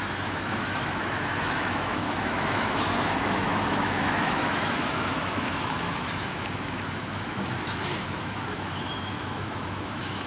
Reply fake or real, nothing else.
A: fake